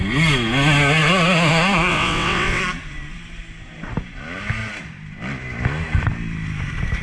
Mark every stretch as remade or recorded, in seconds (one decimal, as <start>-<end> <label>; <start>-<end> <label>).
0.0-1.9 recorded; 1.9-2.6 remade; 2.6-7.0 recorded